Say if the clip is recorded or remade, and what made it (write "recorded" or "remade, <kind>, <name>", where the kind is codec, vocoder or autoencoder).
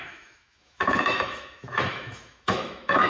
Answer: remade, autoencoder, DAC-VAE